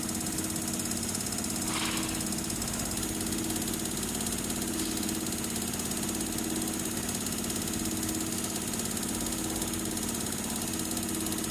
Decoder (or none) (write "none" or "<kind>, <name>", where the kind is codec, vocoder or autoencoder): none